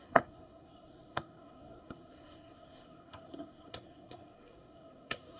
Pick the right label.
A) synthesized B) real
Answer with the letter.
A